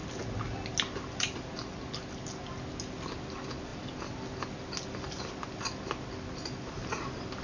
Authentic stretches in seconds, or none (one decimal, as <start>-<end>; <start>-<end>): 0.0-7.4